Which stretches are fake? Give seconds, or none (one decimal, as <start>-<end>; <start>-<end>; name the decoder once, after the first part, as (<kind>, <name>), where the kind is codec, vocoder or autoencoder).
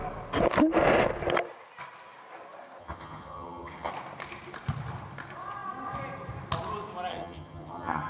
2.8-3.9 (vocoder, HiFi-GAN); 7.1-8.1